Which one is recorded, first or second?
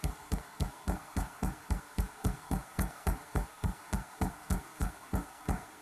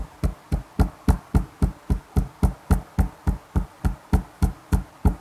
second